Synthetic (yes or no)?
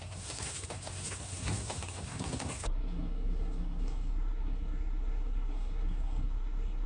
yes